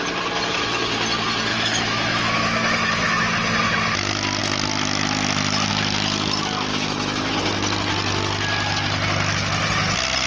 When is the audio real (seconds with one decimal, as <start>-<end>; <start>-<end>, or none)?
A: 0.0-1.5; 3.2-6.7; 7.3-10.3